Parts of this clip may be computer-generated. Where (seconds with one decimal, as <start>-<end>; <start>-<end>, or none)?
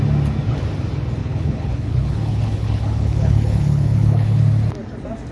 1.2-4.4